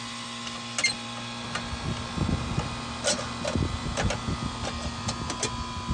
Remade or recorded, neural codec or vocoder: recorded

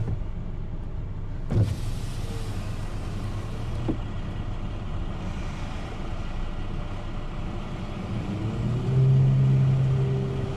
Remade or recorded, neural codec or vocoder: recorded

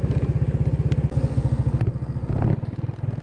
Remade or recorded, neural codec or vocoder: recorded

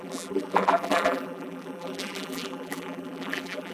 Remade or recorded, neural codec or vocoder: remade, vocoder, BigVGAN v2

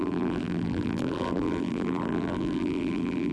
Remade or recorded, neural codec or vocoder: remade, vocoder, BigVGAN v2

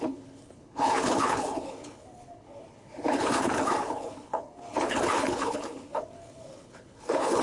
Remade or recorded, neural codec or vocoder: remade, codec, HILCodec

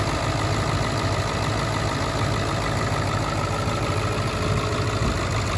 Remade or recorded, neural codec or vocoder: recorded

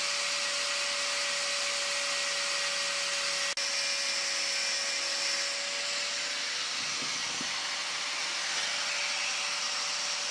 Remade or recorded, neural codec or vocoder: recorded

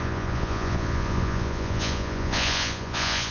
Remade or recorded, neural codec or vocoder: remade, vocoder, Vocos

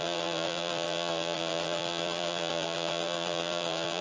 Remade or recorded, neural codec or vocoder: remade, vocoder, BigVGAN v2